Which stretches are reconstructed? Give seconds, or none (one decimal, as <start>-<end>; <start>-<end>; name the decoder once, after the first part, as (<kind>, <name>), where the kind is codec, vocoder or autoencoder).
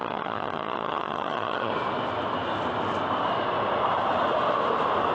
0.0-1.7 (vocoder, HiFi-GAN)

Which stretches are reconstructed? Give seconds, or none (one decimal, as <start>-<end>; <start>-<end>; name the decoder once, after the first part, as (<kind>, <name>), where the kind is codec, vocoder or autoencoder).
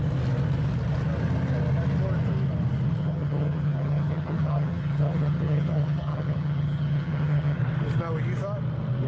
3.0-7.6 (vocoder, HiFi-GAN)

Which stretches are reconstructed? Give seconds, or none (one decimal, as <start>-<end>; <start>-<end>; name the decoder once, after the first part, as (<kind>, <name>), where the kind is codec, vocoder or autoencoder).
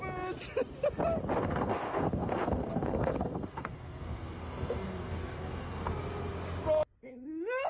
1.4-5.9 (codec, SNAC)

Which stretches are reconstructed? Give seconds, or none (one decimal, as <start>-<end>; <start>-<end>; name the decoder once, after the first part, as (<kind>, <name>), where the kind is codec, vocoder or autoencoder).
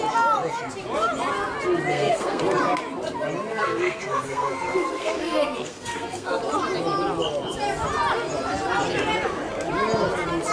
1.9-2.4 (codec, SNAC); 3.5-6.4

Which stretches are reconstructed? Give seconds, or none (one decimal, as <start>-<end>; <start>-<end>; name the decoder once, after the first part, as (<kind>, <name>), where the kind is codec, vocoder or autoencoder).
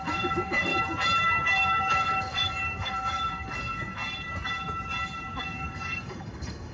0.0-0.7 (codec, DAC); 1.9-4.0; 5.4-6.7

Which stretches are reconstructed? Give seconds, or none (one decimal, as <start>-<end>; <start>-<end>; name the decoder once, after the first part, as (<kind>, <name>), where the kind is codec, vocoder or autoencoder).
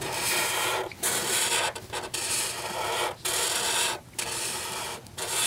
none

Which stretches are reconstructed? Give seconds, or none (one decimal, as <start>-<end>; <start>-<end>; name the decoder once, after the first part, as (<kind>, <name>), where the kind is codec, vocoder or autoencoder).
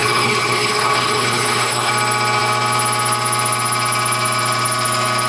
0.0-1.9 (codec, HILCodec)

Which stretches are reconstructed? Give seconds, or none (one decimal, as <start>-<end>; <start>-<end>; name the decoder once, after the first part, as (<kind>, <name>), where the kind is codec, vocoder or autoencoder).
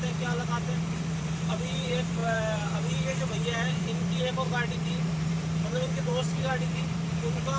0.0-7.6 (vocoder, BigVGAN v2)